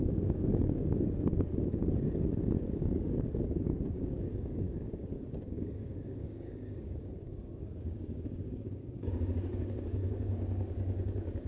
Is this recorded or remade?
remade